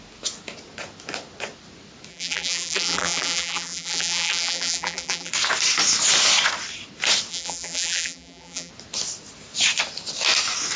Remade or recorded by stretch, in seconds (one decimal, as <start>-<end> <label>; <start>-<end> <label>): 0.0-2.1 recorded; 2.1-5.3 remade; 5.3-7.3 recorded; 7.3-8.7 remade; 8.7-10.8 recorded